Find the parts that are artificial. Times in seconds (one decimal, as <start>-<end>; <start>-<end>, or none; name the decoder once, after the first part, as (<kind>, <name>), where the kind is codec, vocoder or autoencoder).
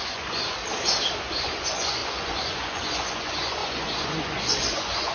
0.0-0.6 (vocoder, Vocos); 1.2-5.1